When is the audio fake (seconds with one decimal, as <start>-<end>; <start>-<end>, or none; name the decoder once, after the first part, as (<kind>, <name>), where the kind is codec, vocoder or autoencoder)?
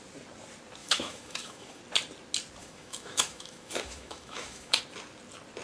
0.8-1.8 (autoencoder, DAC-VAE); 2.6-4.8